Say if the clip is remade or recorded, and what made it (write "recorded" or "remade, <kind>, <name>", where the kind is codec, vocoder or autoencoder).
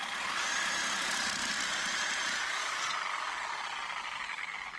recorded